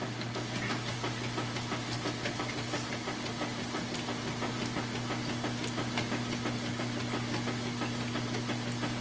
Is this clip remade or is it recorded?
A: recorded